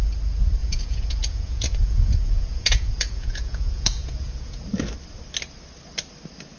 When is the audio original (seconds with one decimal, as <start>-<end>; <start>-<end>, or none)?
0.0-0.6; 4.6-6.6